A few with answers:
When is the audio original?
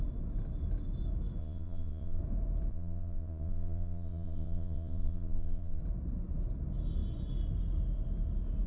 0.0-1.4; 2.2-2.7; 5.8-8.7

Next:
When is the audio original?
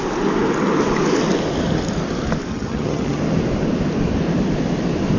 0.0-2.5; 3.2-5.2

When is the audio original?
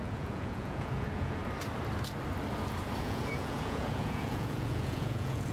1.4-3.0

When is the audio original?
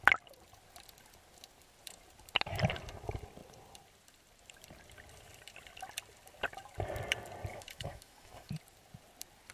0.0-7.5; 8.5-9.5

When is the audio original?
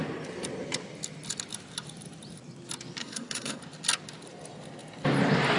0.0-3.0; 3.6-5.6